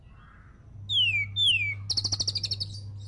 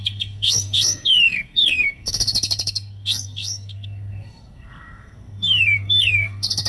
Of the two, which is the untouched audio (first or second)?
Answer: first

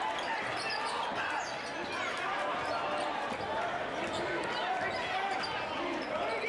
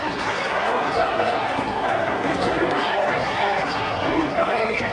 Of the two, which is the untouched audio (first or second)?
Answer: first